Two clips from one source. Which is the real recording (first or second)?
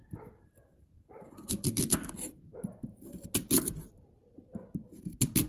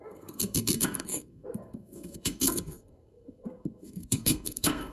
first